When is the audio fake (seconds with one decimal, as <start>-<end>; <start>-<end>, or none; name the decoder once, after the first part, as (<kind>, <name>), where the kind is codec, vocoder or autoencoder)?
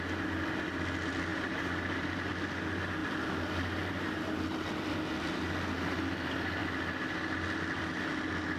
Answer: 1.3-2.3 (vocoder, BigVGAN v2)